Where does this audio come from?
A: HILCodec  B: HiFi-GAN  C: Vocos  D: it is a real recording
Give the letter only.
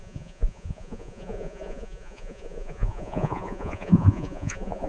C